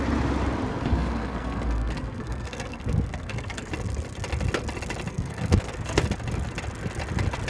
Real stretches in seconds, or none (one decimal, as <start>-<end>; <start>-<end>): 0.0-0.7; 3.7-5.1; 6.0-7.5